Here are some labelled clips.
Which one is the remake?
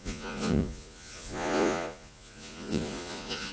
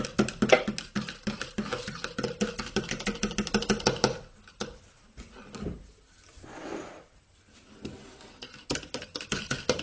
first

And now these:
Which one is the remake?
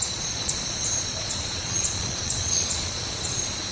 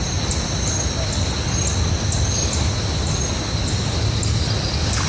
first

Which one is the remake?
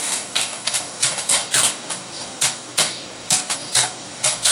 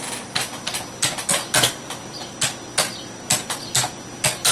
first